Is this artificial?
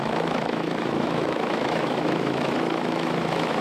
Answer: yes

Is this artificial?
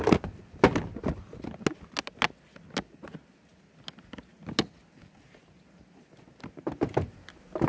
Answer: no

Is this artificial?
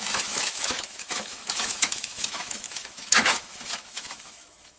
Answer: yes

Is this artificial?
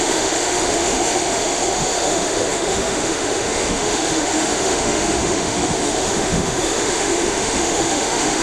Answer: yes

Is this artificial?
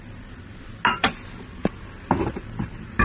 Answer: no